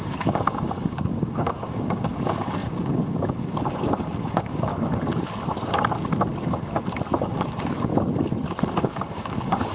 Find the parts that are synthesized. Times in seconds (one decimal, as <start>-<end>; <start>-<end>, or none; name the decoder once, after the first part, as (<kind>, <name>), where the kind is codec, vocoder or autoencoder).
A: 0.0-4.7 (codec, DAC); 7.2-7.9; 8.8-9.7